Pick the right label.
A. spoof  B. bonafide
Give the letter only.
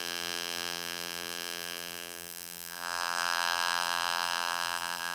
A